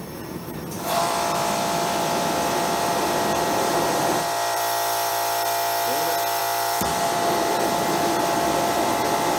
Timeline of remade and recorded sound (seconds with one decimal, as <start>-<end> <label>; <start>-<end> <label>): 0.0-5.1 remade; 5.1-6.4 recorded; 6.4-9.4 remade